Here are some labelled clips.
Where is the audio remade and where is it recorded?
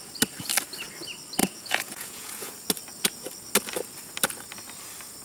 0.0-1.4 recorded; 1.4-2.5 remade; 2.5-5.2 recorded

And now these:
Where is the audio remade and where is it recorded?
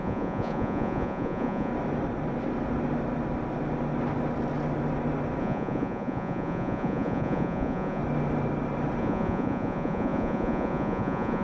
0.0-1.7 remade; 1.7-5.4 recorded; 5.4-8.0 remade; 8.0-9.0 recorded; 9.0-11.4 remade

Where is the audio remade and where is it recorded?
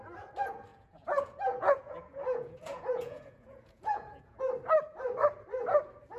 0.0-0.7 recorded; 0.7-4.4 remade; 4.4-6.2 recorded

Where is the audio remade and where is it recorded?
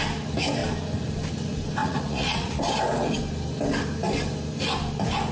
0.0-1.8 recorded; 1.8-2.6 remade; 2.6-5.3 recorded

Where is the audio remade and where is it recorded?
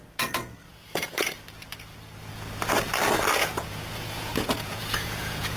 0.0-0.7 recorded; 0.7-1.3 remade; 1.3-3.4 recorded; 3.4-5.6 remade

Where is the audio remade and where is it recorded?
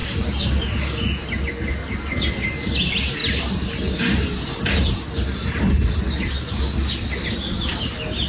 0.0-8.3 recorded